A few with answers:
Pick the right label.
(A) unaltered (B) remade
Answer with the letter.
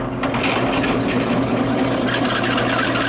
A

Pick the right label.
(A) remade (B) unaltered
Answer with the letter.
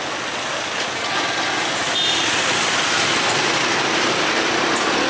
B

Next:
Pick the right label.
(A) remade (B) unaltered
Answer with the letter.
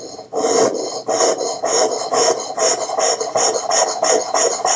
B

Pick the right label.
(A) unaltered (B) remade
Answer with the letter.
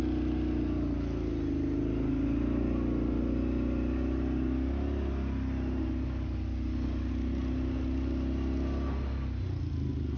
A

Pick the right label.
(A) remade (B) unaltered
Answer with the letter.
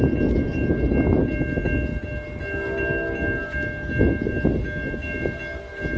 B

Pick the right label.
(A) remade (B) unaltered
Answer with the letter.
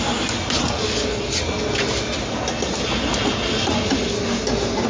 B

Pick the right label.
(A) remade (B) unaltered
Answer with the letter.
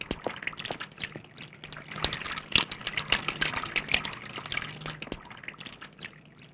B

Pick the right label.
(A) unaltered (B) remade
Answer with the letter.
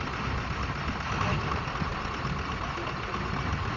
A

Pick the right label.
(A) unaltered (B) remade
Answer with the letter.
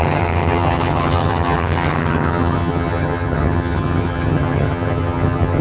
B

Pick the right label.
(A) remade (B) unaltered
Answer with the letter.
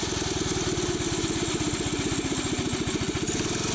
B